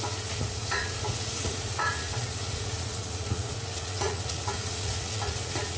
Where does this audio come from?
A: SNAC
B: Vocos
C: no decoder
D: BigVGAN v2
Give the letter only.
B